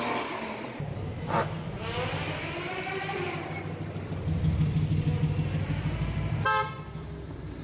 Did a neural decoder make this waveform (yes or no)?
no